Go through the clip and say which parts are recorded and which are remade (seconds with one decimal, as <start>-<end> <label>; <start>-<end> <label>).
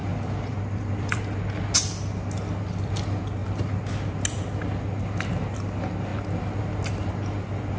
0.0-1.2 remade; 1.2-7.8 recorded